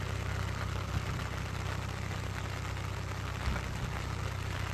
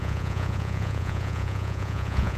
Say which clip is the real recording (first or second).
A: first